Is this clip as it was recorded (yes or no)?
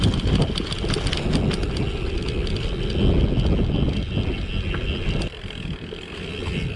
yes